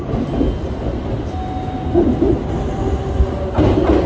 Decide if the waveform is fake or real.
real